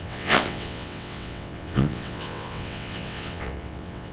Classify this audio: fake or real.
fake